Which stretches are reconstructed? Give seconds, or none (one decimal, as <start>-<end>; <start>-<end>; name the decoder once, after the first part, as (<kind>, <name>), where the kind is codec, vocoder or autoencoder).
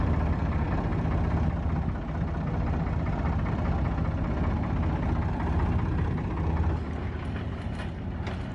0.0-0.9 (vocoder, BigVGAN v2); 5.3-8.5